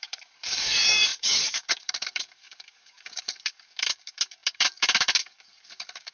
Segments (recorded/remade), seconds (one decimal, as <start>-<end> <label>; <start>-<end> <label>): 0.0-6.1 remade

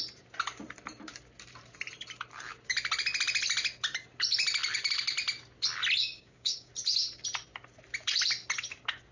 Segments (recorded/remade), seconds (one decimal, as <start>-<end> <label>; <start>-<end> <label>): 0.0-6.0 recorded; 6.0-6.7 remade; 6.7-9.1 recorded

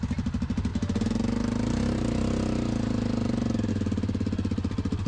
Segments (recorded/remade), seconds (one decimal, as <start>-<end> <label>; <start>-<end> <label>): 0.0-5.1 recorded

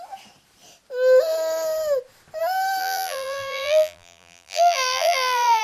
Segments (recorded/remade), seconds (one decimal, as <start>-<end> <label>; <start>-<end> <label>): 0.0-2.8 recorded; 2.8-5.6 remade

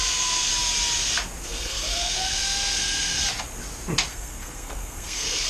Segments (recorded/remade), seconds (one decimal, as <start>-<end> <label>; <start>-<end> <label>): 0.0-0.5 remade; 0.5-1.4 recorded; 1.4-3.2 remade; 3.2-4.1 recorded; 4.1-5.5 remade

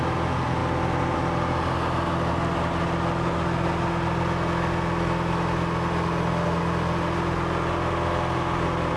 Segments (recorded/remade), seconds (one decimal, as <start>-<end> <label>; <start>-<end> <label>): 0.0-9.0 recorded

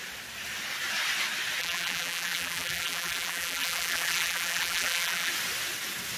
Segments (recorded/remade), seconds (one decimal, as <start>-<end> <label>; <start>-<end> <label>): 0.0-1.6 recorded; 1.6-5.3 remade; 5.3-6.2 recorded